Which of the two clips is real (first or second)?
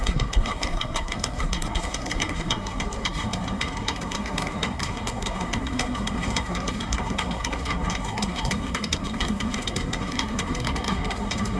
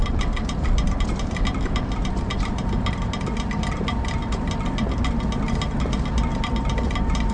second